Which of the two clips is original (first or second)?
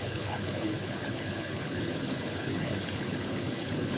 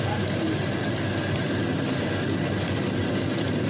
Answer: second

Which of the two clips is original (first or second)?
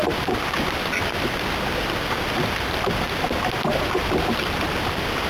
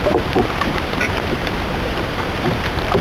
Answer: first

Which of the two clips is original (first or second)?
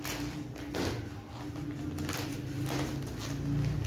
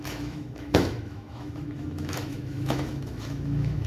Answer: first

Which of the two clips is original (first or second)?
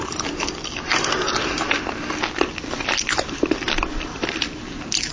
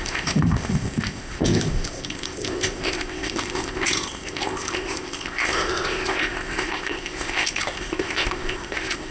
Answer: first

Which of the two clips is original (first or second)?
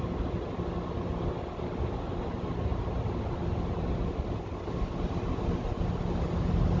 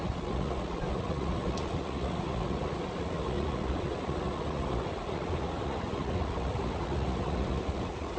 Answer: first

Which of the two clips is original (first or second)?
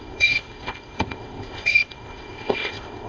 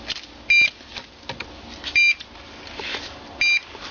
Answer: second